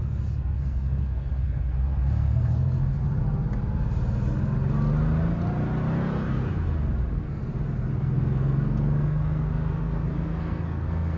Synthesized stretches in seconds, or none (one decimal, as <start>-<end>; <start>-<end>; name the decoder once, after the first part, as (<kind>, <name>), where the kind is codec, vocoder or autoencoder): 0.0-3.0 (codec, SNAC); 7.1-7.5; 8.0-11.2